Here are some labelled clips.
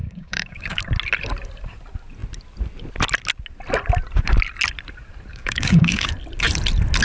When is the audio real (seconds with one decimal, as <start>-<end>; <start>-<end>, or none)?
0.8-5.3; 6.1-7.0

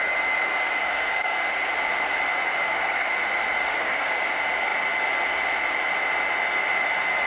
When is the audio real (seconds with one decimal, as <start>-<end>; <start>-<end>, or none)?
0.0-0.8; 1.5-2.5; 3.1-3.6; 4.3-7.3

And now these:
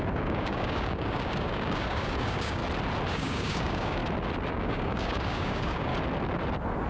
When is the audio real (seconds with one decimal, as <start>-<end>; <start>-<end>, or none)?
2.6-3.1; 4.0-4.5; 5.9-6.9

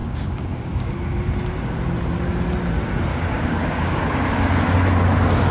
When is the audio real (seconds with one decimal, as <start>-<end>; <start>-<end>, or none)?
0.9-3.1; 4.3-5.5

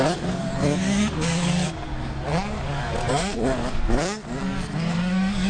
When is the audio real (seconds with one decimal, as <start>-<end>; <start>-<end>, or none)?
none

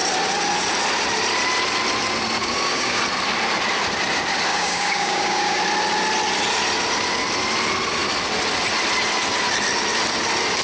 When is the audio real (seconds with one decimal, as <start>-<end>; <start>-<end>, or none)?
0.0-2.4; 3.0-4.5; 5.6-10.6

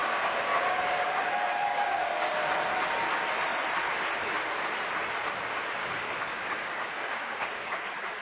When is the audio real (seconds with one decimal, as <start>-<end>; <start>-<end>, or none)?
2.3-5.8